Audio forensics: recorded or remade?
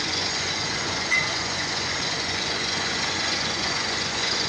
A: remade